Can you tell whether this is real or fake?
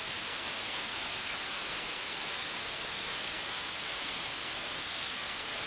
fake